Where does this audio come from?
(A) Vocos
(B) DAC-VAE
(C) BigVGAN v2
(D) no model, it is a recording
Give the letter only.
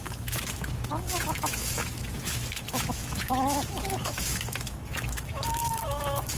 B